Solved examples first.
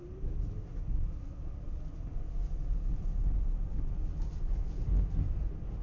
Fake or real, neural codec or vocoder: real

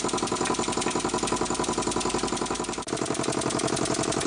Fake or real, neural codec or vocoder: real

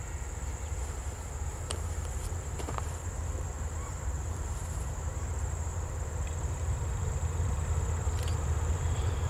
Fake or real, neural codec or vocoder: fake, vocoder, BigVGAN v2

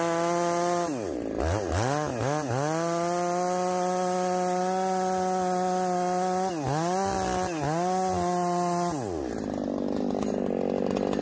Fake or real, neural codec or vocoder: real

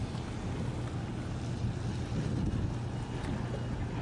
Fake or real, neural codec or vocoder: real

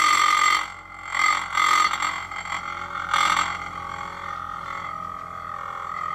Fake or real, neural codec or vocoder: real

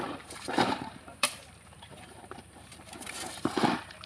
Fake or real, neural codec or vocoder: fake, vocoder, BigVGAN v2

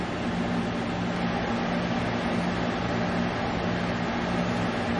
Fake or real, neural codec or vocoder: real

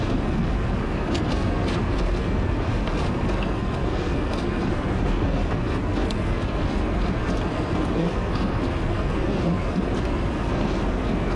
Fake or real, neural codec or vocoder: fake, codec, SNAC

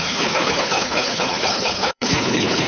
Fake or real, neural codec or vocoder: fake, codec, HILCodec